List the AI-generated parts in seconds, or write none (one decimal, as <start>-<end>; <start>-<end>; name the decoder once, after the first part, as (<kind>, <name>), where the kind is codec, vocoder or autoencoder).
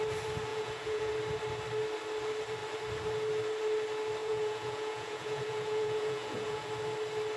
0.5-1.1 (vocoder, Vocos); 4.2-6.7